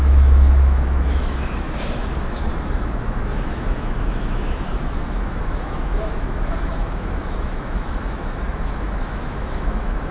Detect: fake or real fake